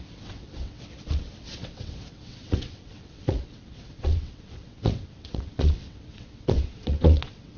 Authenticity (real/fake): fake